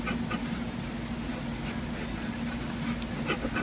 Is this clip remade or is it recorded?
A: recorded